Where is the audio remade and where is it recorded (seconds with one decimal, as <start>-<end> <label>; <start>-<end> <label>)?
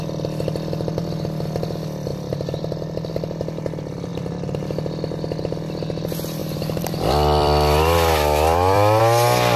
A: 0.0-2.1 recorded; 2.1-3.1 remade; 3.1-6.4 recorded; 6.4-9.0 remade; 9.0-9.6 recorded